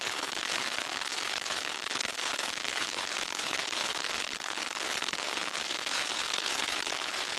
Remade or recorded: remade